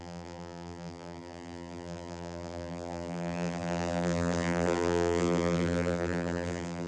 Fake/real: fake